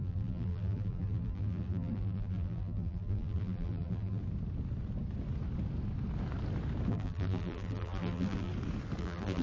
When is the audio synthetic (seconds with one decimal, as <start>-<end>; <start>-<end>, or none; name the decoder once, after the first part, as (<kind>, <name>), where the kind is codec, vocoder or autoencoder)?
0.0-4.2 (vocoder, BigVGAN v2); 6.9-8.5; 9.0-9.4